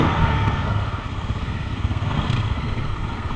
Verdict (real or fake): fake